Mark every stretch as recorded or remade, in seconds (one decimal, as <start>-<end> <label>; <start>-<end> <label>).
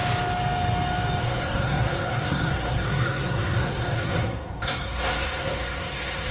0.0-1.2 recorded; 1.2-6.3 remade